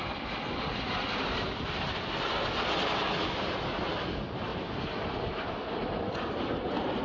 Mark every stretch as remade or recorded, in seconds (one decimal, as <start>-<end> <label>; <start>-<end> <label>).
0.0-4.5 recorded; 4.5-7.0 remade